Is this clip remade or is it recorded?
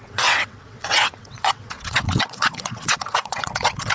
remade